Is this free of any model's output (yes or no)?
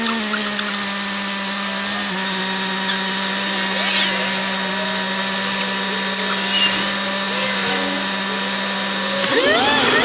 yes